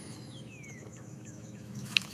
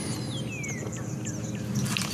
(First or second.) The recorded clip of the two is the second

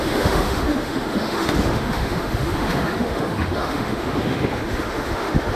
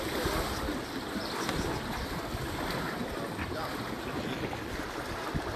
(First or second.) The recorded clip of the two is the second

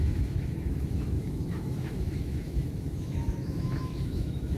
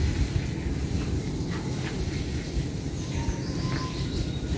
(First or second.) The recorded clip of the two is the second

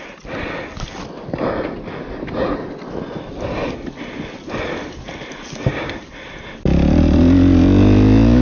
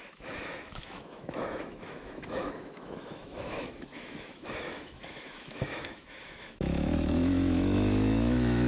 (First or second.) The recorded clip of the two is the first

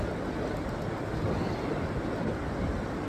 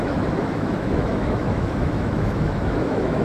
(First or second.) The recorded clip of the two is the first